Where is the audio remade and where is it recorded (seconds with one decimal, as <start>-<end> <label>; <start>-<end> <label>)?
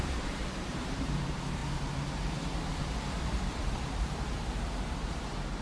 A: 0.0-1.6 remade; 1.6-3.2 recorded; 3.2-5.6 remade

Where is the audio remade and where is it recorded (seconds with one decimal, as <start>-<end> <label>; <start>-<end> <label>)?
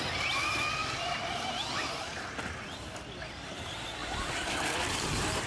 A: 0.0-0.8 recorded; 0.8-2.9 remade; 2.9-4.0 recorded; 4.0-4.9 remade; 4.9-5.5 recorded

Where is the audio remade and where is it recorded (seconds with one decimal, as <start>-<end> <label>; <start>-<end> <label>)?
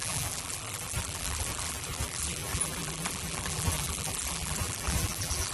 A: 0.0-5.5 remade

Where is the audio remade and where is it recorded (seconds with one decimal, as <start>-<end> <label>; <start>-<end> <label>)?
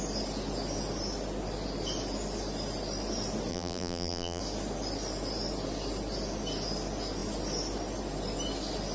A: 0.0-3.5 recorded; 3.5-4.4 remade; 4.4-8.9 recorded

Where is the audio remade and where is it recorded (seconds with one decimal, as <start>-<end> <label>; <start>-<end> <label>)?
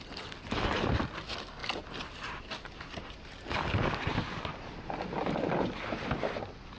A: 0.0-6.8 recorded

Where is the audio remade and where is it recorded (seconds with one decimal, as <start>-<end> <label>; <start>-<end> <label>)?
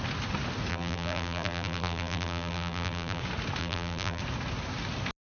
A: 0.0-0.7 recorded; 0.7-3.2 remade; 3.2-3.6 recorded; 3.6-4.2 remade; 4.2-5.3 recorded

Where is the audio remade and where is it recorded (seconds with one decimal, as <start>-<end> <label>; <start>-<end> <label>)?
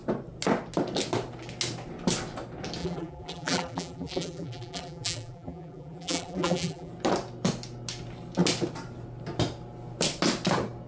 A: 0.0-2.8 recorded; 2.8-6.9 remade; 6.9-10.9 recorded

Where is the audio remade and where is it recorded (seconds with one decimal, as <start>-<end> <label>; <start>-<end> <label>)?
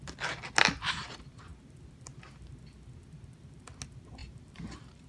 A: 0.0-4.2 recorded; 4.2-5.1 remade